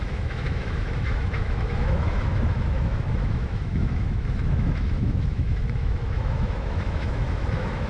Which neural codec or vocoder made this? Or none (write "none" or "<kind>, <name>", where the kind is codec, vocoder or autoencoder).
autoencoder, DAC-VAE